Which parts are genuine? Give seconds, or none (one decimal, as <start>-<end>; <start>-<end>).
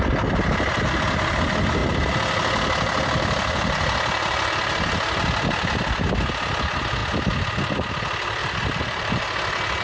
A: 0.0-8.4; 9.2-9.8